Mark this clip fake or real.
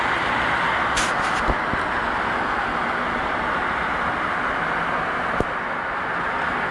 real